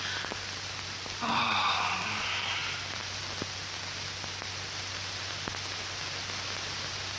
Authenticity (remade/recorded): recorded